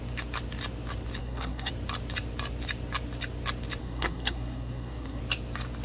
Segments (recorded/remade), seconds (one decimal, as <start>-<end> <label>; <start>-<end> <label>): 0.0-1.2 recorded; 1.2-1.7 remade; 1.7-3.8 recorded; 3.8-5.2 remade; 5.2-5.8 recorded

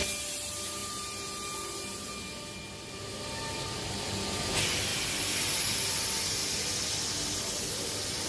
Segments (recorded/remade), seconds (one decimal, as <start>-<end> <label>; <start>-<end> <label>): 0.0-8.3 recorded

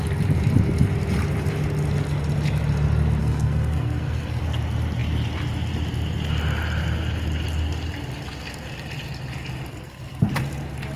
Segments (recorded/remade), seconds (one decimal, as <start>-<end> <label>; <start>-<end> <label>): 0.0-3.2 recorded; 3.2-4.4 remade; 4.4-9.7 recorded; 9.7-10.3 remade; 10.3-11.0 recorded

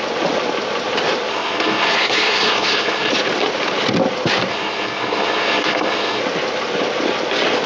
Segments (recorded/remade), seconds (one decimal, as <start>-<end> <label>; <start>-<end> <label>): 0.0-1.3 recorded; 1.3-3.1 remade; 3.1-4.5 recorded; 4.5-6.2 remade; 6.2-7.7 recorded

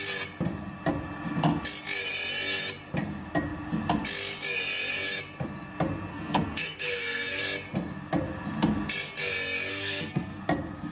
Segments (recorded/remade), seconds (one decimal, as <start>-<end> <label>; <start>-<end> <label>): 0.0-6.1 recorded; 6.1-7.4 remade; 7.4-9.7 recorded; 9.7-10.4 remade; 10.4-10.9 recorded

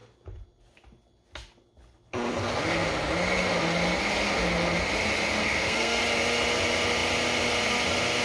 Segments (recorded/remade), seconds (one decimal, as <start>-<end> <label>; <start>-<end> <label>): 0.0-5.4 recorded; 5.4-6.0 remade; 6.0-8.2 recorded

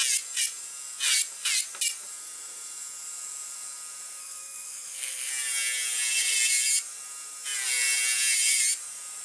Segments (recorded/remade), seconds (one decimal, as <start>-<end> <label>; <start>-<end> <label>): 0.0-4.2 recorded; 4.2-5.3 remade; 5.3-9.2 recorded